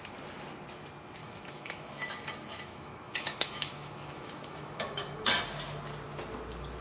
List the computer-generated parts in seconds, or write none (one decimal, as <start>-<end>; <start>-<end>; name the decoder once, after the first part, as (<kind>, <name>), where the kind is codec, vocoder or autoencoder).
1.2-5.3 (autoencoder, DAC-VAE)